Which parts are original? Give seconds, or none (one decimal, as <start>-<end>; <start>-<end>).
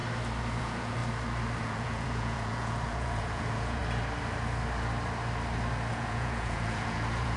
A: 0.0-0.6; 1.0-1.6; 3.8-5.9